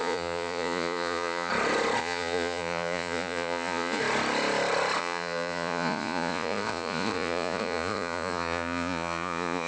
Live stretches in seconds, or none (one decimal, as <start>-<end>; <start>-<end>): 1.5-2.0; 4.0-5.0